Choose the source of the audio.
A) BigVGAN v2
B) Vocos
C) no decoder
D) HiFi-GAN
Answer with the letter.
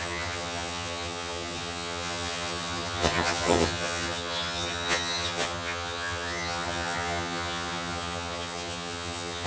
D